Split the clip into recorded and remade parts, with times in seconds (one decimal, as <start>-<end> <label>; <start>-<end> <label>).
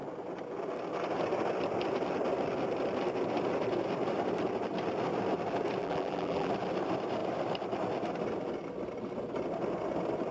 0.0-5.8 recorded; 5.8-6.5 remade; 6.5-10.3 recorded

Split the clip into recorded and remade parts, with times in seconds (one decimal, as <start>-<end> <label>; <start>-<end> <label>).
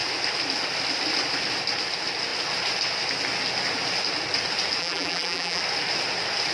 0.0-4.8 recorded; 4.8-5.6 remade; 5.6-6.5 recorded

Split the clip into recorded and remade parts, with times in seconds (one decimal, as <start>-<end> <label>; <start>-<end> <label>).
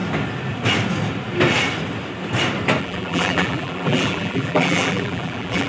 0.0-2.8 recorded; 2.8-5.7 remade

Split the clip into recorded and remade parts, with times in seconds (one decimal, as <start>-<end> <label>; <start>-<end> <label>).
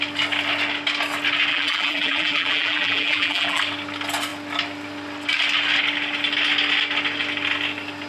0.0-1.5 recorded; 1.5-3.6 remade; 3.6-8.1 recorded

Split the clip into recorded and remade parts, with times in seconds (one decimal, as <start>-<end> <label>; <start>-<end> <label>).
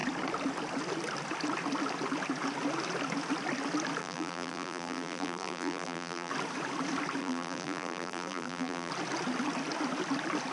0.0-4.0 recorded; 4.0-6.3 remade; 6.3-7.2 recorded; 7.2-8.9 remade; 8.9-10.5 recorded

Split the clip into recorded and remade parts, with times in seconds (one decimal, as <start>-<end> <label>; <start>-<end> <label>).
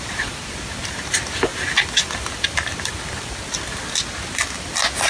0.0-5.1 recorded